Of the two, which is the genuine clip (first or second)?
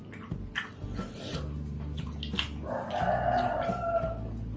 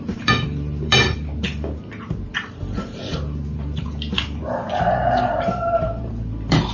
first